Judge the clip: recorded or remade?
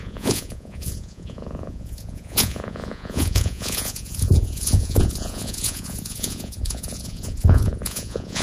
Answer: remade